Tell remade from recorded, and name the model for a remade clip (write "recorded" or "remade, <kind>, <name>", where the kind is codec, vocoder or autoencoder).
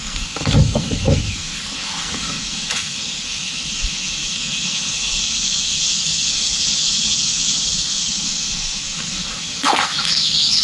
remade, codec, SNAC